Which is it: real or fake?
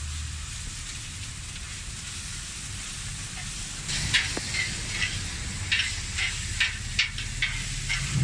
real